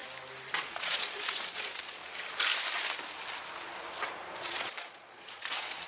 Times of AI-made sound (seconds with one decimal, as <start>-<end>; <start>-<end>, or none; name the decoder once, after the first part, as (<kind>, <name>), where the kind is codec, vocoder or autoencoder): 0.6-2.0 (vocoder, Vocos); 4.4-5.9